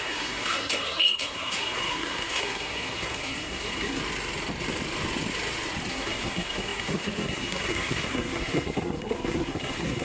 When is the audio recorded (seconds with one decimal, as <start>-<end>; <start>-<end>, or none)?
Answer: 4.0-5.9